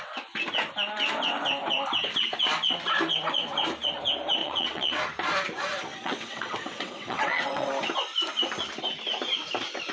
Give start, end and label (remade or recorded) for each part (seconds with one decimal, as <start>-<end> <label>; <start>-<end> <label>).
0.0-4.4 recorded; 4.4-5.0 remade; 5.0-5.9 recorded; 5.9-7.7 remade; 7.7-9.9 recorded